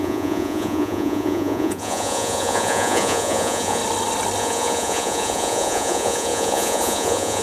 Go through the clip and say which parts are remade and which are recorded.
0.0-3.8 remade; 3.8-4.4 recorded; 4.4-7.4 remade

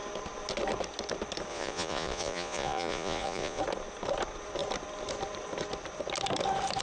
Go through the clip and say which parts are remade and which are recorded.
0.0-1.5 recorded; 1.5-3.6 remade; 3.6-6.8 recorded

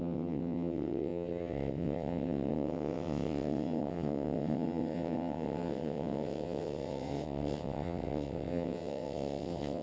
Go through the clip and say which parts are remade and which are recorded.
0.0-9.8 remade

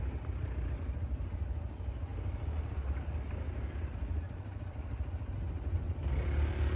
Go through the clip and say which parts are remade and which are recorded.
0.0-6.8 recorded

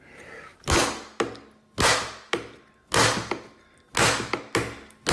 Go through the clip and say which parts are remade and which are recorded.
0.0-5.1 recorded

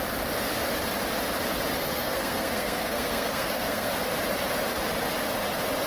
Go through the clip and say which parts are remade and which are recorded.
0.0-1.8 recorded; 1.8-3.9 remade; 3.9-5.9 recorded